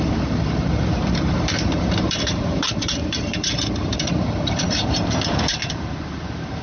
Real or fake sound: fake